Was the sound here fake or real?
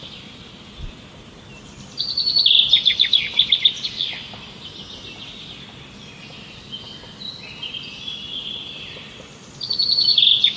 real